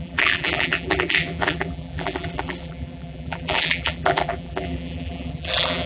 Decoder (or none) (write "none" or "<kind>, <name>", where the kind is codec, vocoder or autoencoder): vocoder, BigVGAN v2